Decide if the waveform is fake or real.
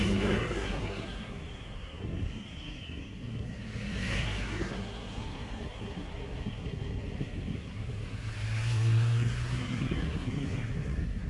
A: fake